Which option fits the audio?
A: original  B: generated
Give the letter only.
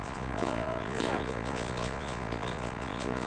B